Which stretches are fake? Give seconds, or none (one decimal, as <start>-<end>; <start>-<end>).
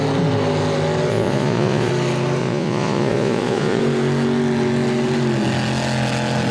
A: 1.1-1.9; 2.4-3.8